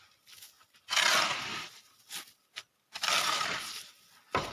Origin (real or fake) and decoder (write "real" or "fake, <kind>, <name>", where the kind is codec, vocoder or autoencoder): real